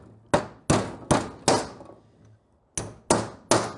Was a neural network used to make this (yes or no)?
no